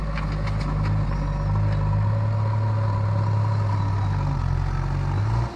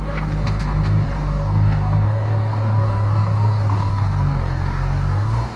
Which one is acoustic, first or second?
first